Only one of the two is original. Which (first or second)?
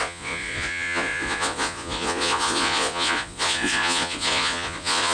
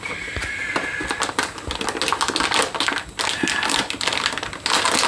second